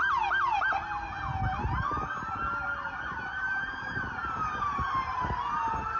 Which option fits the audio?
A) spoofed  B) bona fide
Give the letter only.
B